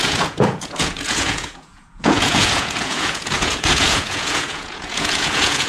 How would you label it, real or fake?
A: fake